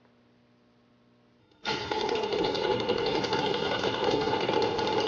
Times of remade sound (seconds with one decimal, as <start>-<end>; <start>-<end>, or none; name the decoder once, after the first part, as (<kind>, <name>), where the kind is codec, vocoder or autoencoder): 1.4-4.5 (codec, SNAC)